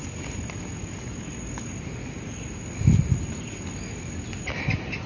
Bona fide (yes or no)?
yes